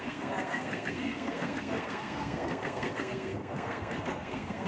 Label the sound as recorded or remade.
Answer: remade